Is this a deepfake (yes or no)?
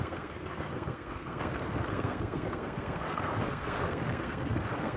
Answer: yes